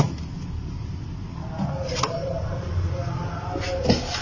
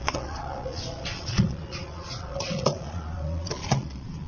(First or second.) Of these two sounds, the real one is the first